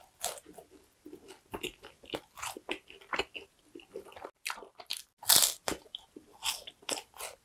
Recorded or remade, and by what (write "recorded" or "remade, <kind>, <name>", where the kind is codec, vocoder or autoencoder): recorded